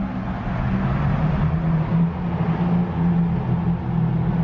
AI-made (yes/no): no